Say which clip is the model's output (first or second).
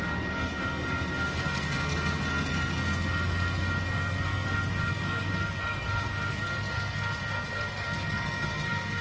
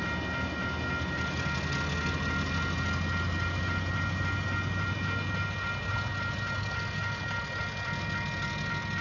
first